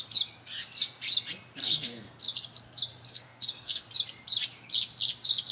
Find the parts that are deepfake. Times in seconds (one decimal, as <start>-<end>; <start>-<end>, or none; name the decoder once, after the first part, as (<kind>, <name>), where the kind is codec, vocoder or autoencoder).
1.6-2.2 (codec, SNAC); 3.1-3.8